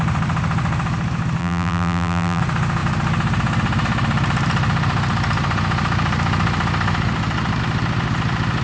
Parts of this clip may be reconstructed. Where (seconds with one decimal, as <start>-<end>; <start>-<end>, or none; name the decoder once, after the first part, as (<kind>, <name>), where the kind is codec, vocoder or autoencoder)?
1.4-2.4 (vocoder, BigVGAN v2)